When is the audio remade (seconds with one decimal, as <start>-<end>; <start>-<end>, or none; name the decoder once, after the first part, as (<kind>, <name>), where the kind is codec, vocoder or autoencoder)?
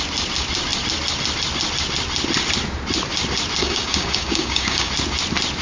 3.6-4.9 (codec, DAC)